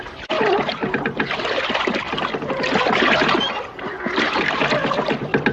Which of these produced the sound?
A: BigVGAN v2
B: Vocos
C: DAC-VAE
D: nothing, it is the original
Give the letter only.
D